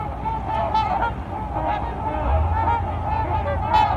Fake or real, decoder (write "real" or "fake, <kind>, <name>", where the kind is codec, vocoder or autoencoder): real